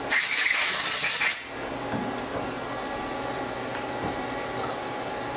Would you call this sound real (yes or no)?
yes